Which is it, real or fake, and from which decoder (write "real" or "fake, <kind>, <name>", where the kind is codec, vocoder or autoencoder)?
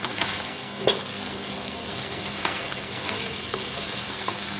fake, codec, SNAC